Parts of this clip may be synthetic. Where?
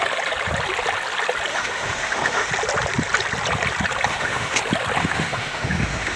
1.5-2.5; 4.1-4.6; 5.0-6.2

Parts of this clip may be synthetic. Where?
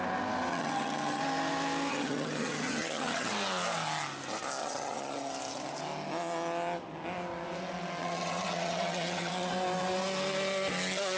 0.5-1.2; 1.9-3.3; 4.6-5.3; 8.0-9.5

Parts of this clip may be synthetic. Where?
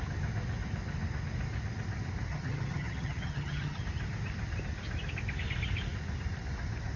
2.3-3.8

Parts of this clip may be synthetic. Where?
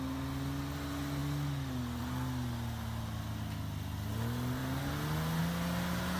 none